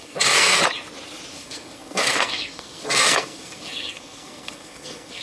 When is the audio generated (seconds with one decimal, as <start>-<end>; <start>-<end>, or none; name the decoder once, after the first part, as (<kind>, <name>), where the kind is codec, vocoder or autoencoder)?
0.0-0.6 (codec, SNAC); 1.3-5.2